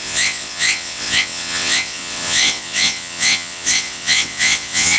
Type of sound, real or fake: fake